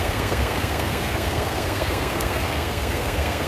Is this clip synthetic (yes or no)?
yes